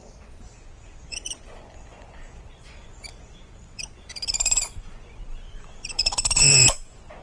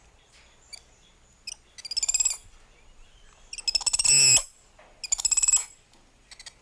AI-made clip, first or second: first